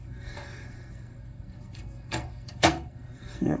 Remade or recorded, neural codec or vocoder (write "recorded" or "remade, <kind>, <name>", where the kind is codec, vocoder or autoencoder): remade, codec, SNAC